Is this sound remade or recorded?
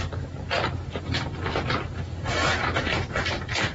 recorded